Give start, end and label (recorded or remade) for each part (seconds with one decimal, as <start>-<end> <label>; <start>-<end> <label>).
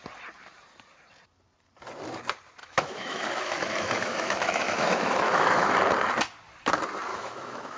0.0-2.6 recorded; 2.6-5.8 remade; 5.8-7.1 recorded; 7.1-7.8 remade